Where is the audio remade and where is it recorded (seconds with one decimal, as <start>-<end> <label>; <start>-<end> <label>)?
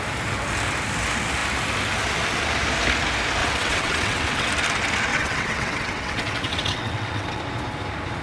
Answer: 0.0-3.4 recorded; 3.4-4.5 remade; 4.5-5.1 recorded; 5.1-7.4 remade; 7.4-8.2 recorded